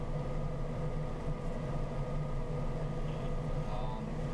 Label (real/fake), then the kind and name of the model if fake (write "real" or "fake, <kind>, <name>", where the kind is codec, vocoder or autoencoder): real